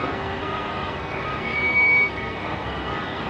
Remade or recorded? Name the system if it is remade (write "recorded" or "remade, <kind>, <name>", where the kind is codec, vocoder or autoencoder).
remade, codec, SNAC